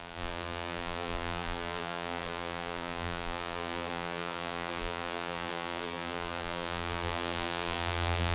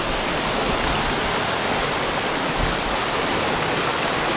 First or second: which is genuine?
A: second